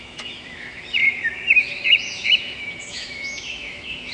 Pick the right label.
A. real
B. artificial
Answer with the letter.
B